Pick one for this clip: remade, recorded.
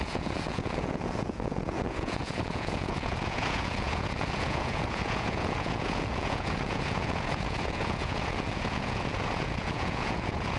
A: remade